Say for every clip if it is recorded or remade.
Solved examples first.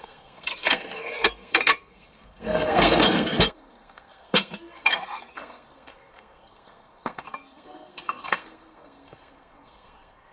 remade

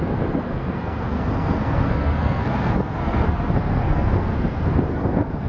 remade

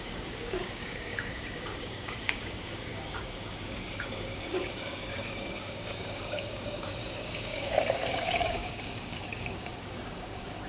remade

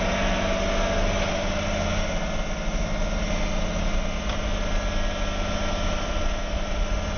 recorded